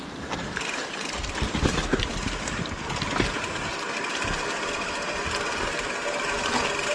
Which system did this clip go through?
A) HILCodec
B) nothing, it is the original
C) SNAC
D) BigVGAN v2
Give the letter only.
B